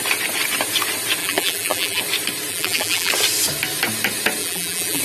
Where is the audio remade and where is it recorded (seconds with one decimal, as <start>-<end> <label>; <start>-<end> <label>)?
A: 0.0-1.2 recorded; 1.2-2.0 remade; 2.0-2.5 recorded; 2.5-3.1 remade; 3.1-4.4 recorded; 4.4-5.0 remade